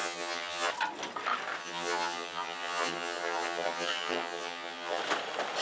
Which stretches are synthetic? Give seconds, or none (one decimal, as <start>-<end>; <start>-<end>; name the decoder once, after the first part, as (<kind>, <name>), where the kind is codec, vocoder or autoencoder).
0.0-0.7 (vocoder, HiFi-GAN); 1.6-5.0